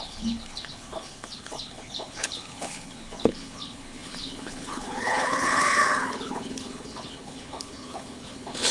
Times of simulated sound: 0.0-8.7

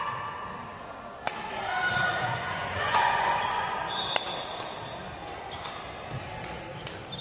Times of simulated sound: 2.1-3.8

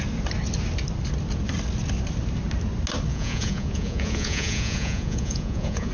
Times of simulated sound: 3.1-5.9

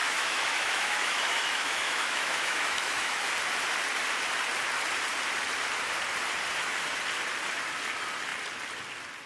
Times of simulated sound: 0.0-3.3

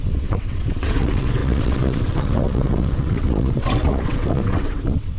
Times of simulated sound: 0.0-5.2

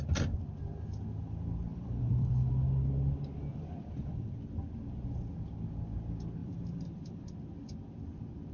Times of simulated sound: 1.7-2.5; 3.5-4.3; 6.4-7.2

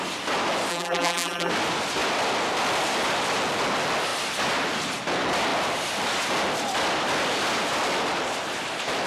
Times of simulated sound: 0.7-1.5